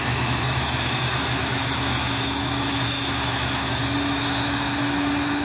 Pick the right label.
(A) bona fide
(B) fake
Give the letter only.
B